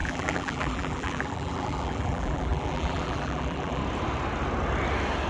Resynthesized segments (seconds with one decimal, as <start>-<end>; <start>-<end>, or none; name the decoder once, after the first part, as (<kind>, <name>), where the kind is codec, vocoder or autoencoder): 0.0-3.8 (vocoder, BigVGAN v2)

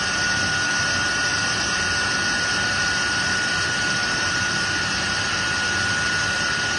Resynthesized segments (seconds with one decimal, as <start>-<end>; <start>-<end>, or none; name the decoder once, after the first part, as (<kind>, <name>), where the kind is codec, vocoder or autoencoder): 1.3-5.4 (vocoder, BigVGAN v2)